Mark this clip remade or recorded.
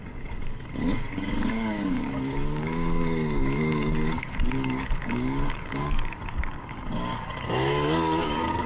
remade